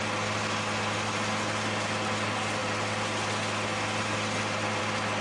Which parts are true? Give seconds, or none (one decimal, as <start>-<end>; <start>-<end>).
0.0-5.2